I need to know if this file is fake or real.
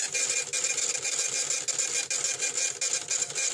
real